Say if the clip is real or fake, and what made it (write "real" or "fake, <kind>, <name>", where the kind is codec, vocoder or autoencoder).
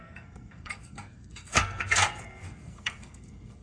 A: fake, codec, SNAC